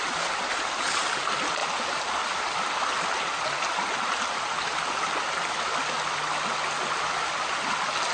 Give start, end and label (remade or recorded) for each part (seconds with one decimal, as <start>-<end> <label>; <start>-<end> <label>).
0.0-8.1 recorded